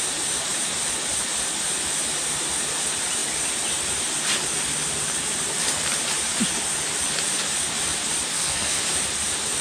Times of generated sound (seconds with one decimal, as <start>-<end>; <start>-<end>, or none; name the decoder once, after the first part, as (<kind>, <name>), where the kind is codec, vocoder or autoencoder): 8.3-8.8 (codec, SNAC)